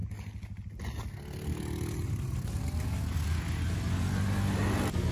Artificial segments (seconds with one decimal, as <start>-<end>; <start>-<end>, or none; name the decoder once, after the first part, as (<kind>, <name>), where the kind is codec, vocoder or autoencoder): none